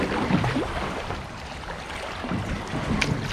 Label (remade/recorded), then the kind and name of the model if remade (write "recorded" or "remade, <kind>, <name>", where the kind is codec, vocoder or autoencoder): recorded